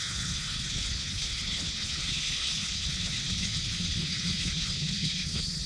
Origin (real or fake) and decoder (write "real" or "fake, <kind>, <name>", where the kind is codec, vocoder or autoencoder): fake, codec, HILCodec